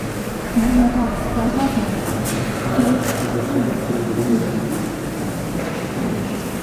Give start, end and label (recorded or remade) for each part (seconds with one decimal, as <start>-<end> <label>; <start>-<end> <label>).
0.0-0.8 recorded; 0.8-1.6 remade; 1.6-6.6 recorded